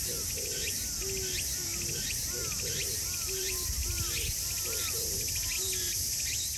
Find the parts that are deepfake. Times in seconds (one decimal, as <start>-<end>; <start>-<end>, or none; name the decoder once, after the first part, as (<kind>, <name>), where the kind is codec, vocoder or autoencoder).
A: 1.7-5.7 (vocoder, BigVGAN v2)